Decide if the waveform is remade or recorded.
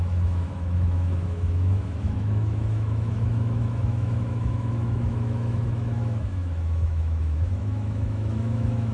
remade